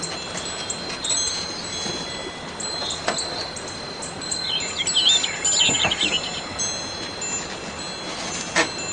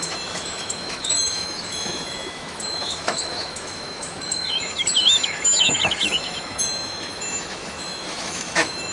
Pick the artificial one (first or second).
second